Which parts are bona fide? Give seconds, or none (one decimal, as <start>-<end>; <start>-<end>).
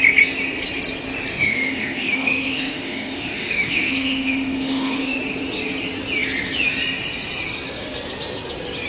0.0-1.3; 5.2-8.9